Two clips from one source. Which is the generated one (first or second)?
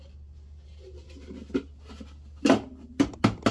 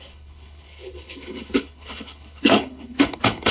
second